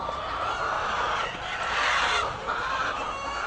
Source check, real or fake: real